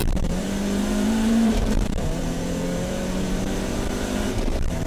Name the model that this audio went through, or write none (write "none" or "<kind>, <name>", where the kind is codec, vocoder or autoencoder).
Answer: vocoder, BigVGAN v2